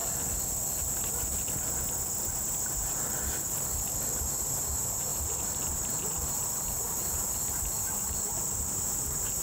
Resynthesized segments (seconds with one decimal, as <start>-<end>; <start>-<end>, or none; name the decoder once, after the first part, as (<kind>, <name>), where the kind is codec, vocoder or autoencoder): 4.2-9.4 (vocoder, BigVGAN v2)